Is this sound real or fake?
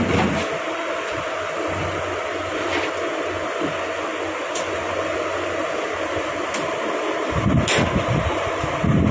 real